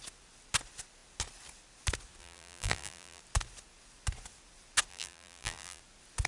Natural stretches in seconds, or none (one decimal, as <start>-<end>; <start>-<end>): 0.0-2.2; 3.2-4.9; 5.8-6.3